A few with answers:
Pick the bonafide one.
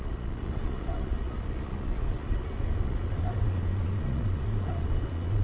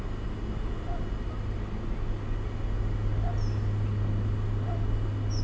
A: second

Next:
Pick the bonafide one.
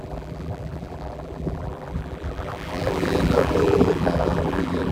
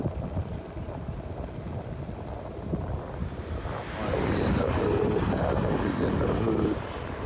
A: second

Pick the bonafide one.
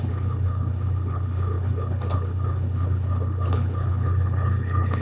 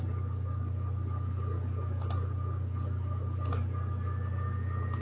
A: second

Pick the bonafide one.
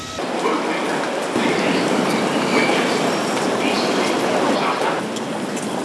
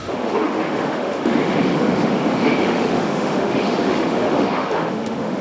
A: first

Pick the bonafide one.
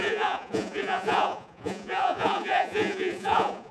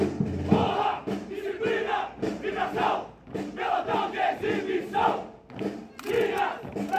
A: second